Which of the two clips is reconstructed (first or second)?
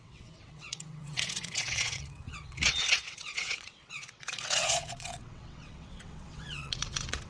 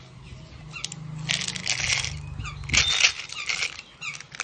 first